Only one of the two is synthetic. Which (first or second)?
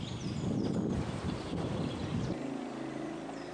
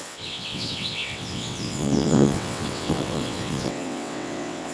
second